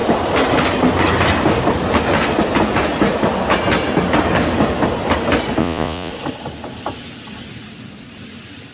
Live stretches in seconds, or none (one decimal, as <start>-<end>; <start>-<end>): 0.0-5.6; 6.1-8.7